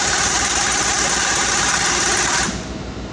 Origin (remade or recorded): recorded